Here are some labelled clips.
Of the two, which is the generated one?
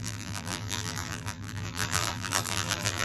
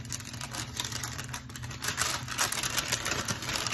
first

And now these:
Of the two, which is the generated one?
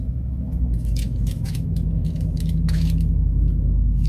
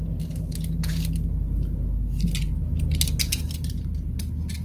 first